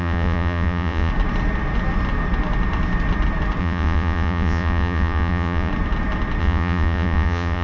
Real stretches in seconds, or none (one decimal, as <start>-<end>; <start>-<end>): 1.1-3.6; 5.7-6.4